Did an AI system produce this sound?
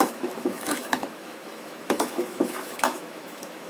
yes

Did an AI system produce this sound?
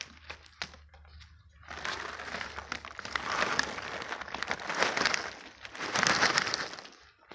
no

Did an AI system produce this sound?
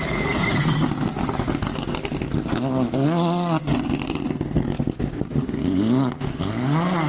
no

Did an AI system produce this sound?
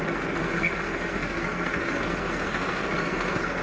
yes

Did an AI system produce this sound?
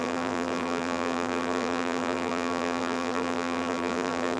yes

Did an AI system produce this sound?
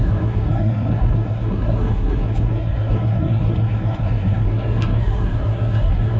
yes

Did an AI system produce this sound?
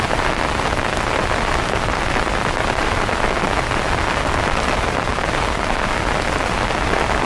no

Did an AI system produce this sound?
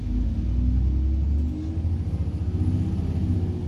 no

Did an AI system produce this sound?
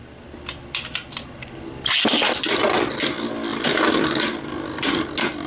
no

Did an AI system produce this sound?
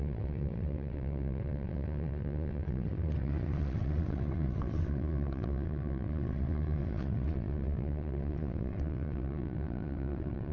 yes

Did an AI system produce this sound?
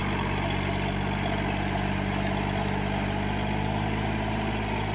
no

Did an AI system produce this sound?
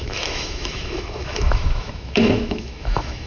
yes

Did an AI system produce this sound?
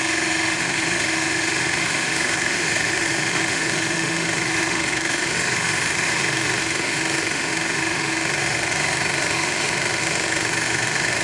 yes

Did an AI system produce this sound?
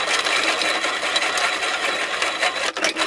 no